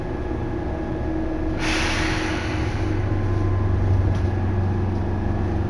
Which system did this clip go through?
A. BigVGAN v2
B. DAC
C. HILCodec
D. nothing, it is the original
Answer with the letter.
D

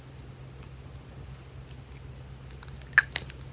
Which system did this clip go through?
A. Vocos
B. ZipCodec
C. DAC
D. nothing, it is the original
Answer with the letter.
D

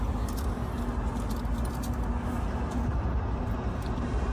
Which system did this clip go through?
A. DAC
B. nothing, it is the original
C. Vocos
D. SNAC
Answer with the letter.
B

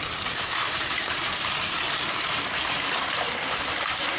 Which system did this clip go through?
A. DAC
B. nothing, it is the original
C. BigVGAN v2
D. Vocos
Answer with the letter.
C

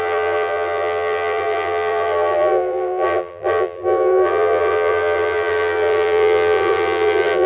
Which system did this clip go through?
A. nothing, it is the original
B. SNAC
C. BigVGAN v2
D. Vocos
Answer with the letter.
C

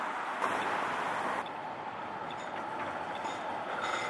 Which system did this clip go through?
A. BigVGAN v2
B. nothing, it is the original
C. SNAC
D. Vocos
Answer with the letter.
B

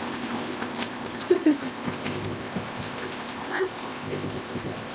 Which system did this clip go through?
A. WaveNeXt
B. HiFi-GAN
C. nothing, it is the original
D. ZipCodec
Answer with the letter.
D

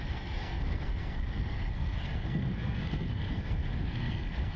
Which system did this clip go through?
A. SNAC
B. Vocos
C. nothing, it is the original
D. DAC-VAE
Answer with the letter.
A